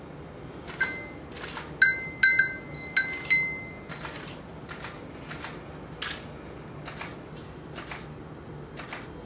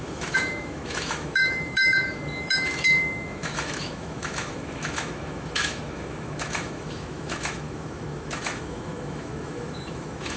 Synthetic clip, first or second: second